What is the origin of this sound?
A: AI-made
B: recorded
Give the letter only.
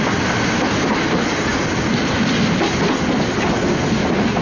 B